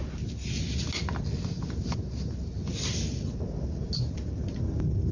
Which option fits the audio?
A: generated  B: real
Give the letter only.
B